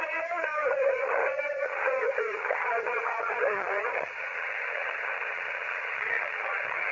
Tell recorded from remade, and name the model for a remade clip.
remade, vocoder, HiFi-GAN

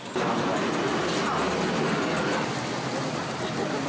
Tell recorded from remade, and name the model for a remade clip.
recorded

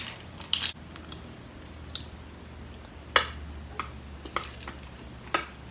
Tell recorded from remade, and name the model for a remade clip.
recorded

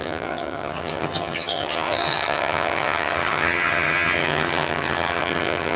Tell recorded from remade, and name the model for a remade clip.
remade, vocoder, HiFi-GAN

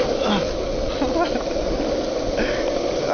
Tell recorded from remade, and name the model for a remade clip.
recorded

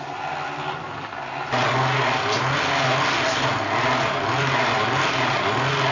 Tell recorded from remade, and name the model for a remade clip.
recorded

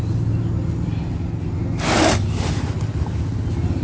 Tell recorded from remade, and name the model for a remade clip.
recorded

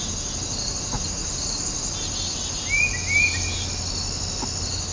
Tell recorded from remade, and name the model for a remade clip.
recorded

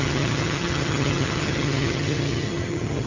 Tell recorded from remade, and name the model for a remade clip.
remade, vocoder, HiFi-GAN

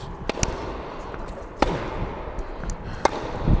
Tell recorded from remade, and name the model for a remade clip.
recorded